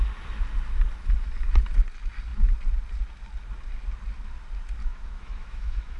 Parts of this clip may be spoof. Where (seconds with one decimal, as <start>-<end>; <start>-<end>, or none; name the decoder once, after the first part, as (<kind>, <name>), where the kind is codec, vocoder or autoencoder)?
4.8-6.0 (autoencoder, DAC-VAE)